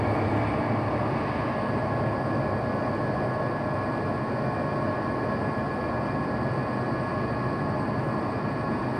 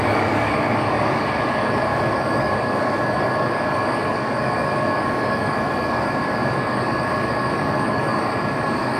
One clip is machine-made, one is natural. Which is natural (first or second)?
first